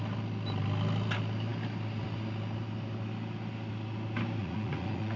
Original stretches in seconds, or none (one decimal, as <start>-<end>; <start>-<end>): 0.0-4.4